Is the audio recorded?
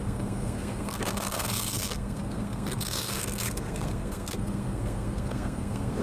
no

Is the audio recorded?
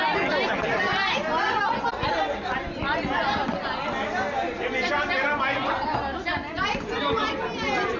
yes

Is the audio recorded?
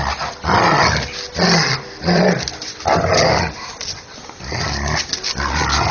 yes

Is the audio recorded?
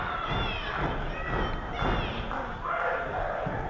yes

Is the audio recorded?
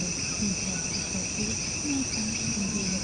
yes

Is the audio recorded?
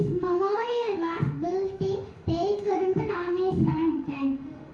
no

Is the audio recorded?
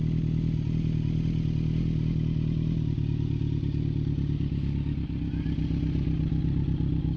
yes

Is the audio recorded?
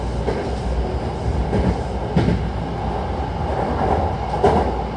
yes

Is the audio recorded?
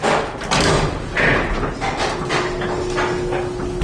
yes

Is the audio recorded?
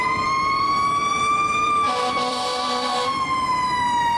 no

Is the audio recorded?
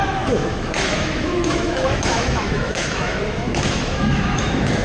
no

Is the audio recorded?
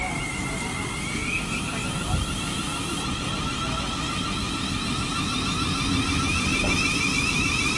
yes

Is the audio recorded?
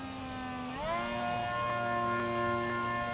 yes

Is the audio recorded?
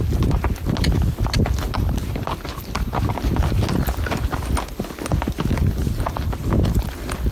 yes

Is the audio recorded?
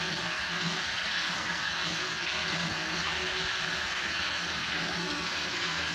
no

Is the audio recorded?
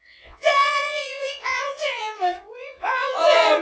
no